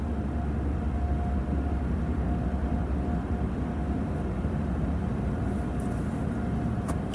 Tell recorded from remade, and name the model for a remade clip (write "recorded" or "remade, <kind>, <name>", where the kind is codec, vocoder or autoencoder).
recorded